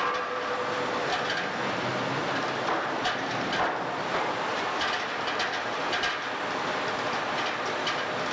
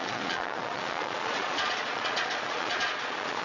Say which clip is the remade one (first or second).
second